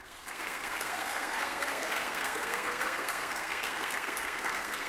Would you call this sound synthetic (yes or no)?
yes